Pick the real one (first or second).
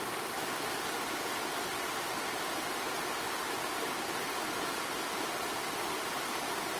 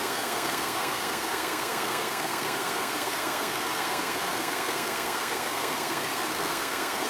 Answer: first